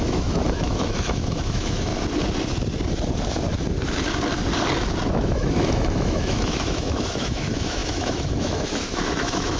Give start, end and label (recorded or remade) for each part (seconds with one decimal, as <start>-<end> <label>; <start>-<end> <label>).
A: 0.0-1.9 remade; 1.9-5.1 recorded; 5.1-9.6 remade